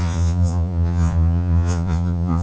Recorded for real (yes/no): no